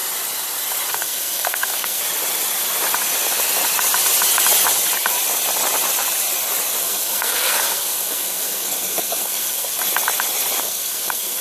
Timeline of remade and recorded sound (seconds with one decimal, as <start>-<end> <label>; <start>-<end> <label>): 0.0-0.9 recorded; 0.9-2.0 remade; 2.0-6.8 recorded; 6.8-9.8 remade; 9.8-10.6 recorded; 10.6-11.4 remade